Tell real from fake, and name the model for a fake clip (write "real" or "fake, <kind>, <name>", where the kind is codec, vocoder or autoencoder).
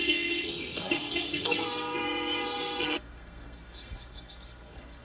fake, codec, SNAC